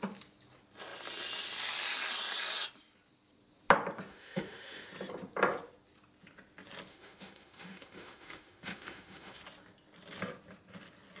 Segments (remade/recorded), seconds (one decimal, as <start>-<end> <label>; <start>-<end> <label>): 0.0-4.1 recorded; 4.1-4.9 remade; 4.9-6.9 recorded; 6.9-9.4 remade; 9.4-11.2 recorded